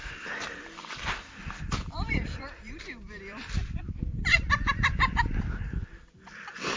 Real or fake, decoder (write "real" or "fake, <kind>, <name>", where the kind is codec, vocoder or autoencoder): fake, vocoder, BigVGAN v2